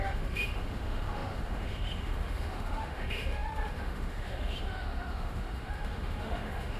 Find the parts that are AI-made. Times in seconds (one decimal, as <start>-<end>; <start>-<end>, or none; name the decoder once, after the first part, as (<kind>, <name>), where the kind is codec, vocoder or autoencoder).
0.0-6.8 (autoencoder, DAC-VAE)